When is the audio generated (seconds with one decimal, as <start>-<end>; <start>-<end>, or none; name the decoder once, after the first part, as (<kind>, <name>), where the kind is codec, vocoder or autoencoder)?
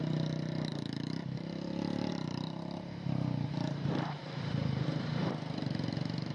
0.0-6.3 (vocoder, BigVGAN v2)